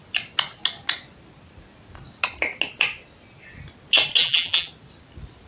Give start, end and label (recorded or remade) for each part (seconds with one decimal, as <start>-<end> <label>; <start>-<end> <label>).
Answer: 0.0-4.2 recorded; 4.2-4.7 remade; 4.7-5.5 recorded